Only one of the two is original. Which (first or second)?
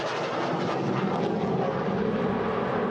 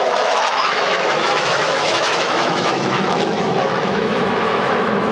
first